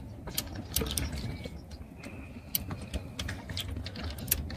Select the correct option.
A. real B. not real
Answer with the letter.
A